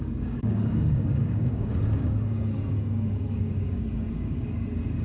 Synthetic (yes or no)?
yes